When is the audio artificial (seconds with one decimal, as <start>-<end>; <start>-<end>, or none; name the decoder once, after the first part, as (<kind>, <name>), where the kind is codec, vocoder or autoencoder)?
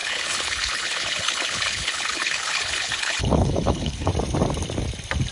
0.0-4.1 (codec, HILCodec)